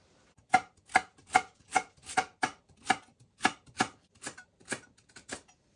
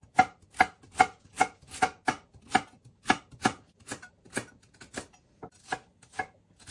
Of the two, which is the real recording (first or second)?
second